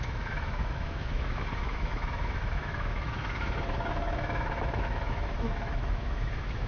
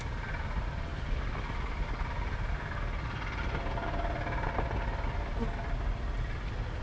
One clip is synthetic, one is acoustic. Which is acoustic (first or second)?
second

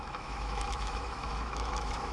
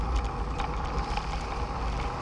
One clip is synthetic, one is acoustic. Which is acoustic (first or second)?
second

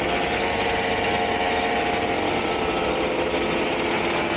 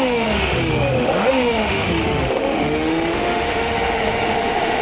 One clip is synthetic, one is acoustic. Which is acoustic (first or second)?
first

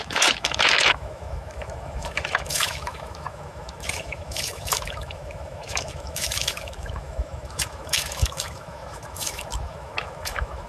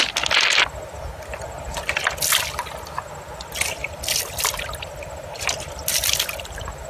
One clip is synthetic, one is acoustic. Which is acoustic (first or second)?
second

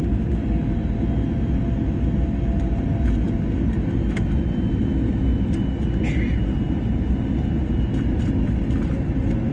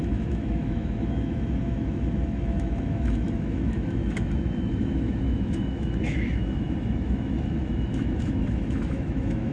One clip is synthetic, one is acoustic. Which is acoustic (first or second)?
first